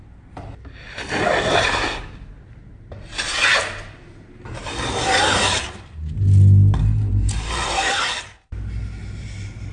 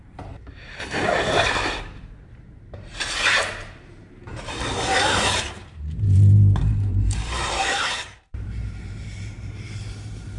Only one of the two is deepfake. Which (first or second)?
second